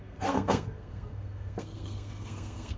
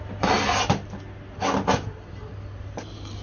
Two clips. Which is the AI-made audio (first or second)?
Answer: first